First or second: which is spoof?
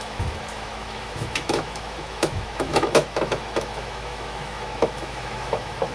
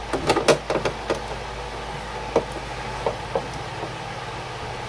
first